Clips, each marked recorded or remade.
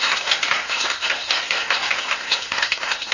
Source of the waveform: remade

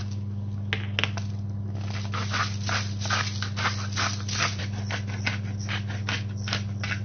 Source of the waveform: recorded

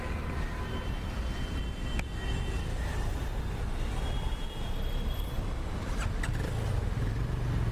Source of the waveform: recorded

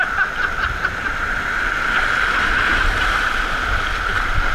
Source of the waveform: remade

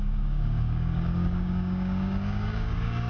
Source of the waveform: remade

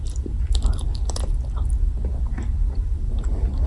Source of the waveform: recorded